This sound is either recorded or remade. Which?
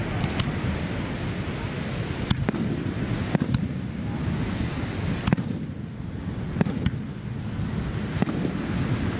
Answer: recorded